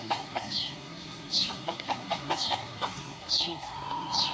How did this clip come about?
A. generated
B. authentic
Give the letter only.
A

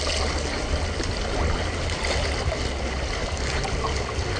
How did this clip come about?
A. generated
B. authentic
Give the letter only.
B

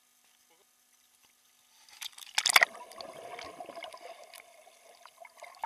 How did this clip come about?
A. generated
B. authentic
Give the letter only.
B